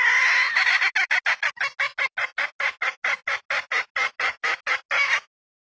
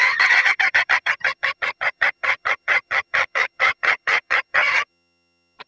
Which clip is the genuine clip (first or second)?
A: first